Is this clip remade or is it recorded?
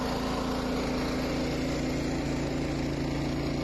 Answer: recorded